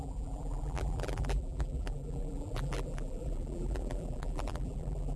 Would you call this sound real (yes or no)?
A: no